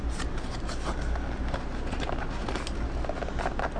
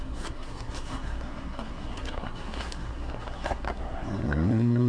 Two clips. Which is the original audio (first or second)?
first